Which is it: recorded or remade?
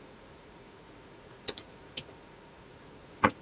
remade